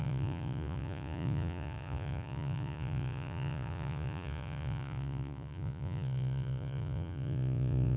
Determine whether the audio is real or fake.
fake